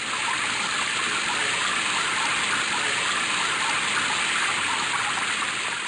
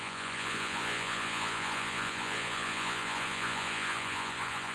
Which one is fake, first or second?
second